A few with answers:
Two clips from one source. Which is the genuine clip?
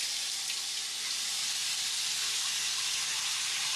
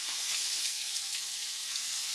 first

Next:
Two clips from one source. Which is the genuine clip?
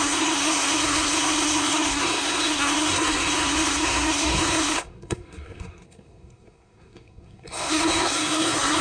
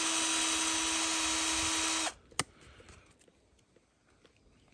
second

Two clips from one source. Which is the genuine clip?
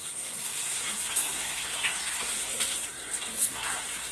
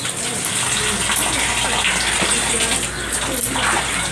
second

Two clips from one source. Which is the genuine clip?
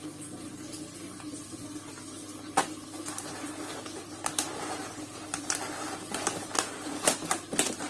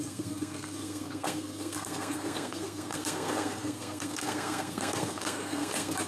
first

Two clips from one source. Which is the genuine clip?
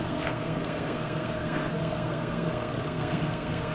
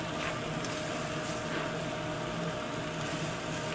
second